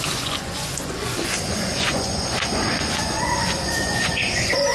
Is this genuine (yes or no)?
no